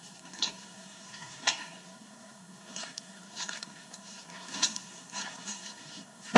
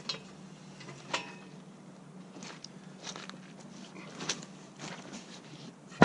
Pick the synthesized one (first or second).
first